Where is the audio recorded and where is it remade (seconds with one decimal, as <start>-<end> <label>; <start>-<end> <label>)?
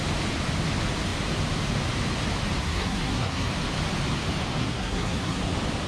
0.0-2.6 recorded; 2.6-3.5 remade; 3.5-4.6 recorded; 4.6-5.4 remade; 5.4-5.9 recorded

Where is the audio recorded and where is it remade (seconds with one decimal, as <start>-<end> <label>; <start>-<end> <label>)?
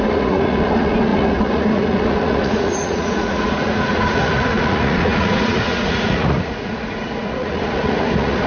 0.0-8.5 remade